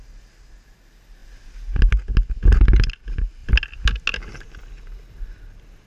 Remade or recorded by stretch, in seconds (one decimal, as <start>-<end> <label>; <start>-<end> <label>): 0.0-5.9 recorded